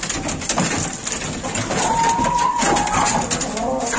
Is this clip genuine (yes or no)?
yes